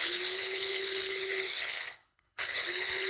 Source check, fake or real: fake